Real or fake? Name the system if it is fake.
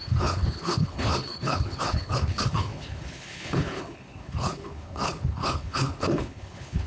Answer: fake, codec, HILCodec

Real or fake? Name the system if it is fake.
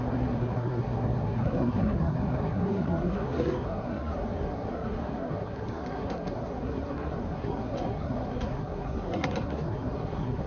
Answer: fake, codec, SNAC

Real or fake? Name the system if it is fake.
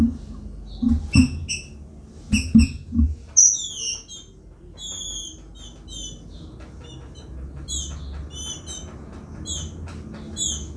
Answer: real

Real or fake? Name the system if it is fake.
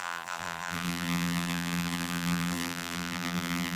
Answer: fake, vocoder, BigVGAN v2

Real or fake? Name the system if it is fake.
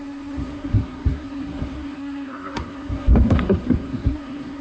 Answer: fake, codec, SNAC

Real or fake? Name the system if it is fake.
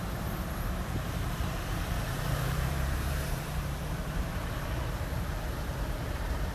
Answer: fake, vocoder, BigVGAN v2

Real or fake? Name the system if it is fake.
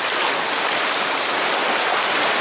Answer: real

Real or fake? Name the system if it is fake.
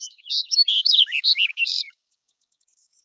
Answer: fake, codec, DAC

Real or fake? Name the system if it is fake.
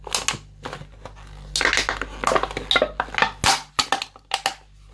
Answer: real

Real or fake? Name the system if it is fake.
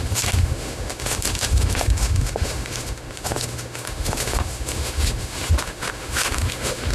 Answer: fake, autoencoder, DAC-VAE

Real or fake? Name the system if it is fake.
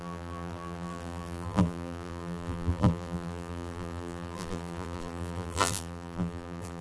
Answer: fake, vocoder, BigVGAN v2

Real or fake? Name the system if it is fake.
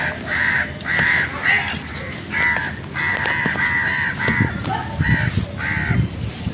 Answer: real